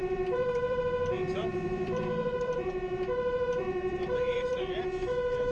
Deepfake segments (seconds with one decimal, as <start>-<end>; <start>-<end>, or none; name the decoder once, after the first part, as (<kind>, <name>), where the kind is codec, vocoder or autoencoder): 0.0-0.8 (vocoder, BigVGAN v2); 1.5-4.8